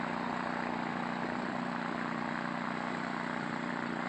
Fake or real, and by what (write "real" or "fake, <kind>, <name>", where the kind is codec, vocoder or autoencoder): fake, vocoder, BigVGAN v2